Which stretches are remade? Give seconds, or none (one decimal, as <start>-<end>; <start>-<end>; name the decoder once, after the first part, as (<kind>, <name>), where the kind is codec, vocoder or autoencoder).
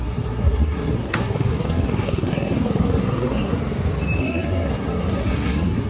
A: 0.0-3.6 (codec, SNAC); 4.2-5.9